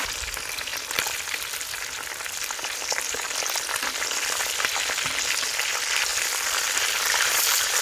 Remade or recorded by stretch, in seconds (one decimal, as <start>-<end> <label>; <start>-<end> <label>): 0.0-0.7 recorded; 0.7-1.4 remade; 1.4-6.1 recorded; 6.1-7.8 remade